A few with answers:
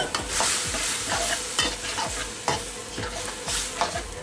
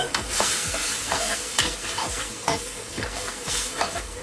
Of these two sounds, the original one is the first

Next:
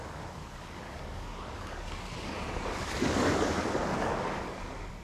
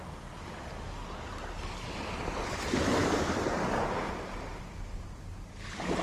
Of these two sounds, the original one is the second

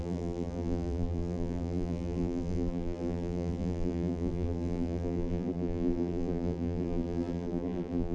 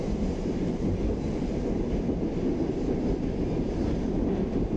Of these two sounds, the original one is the second